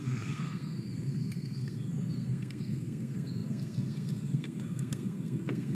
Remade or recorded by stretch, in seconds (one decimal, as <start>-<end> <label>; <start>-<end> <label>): 0.0-5.7 remade